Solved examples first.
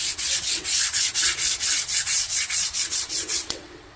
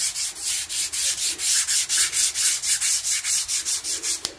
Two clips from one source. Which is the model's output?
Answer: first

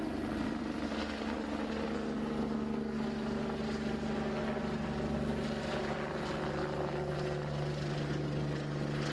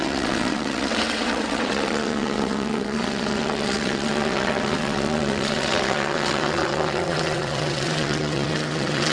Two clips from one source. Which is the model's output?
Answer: second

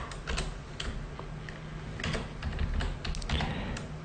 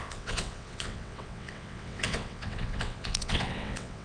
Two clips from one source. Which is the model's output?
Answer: second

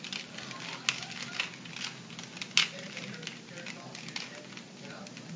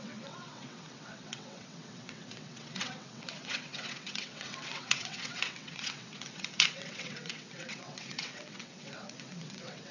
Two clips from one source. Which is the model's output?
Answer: second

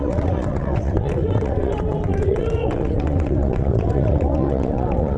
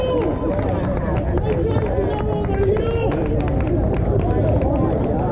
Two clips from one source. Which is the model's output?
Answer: first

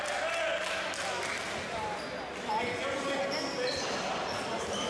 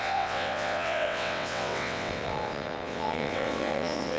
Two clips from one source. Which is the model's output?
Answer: second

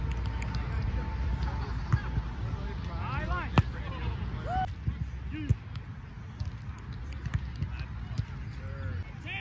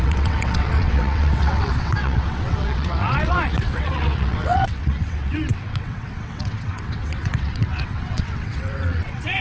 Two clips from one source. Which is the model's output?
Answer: second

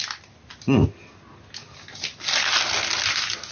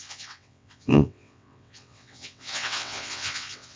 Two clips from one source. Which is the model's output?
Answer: second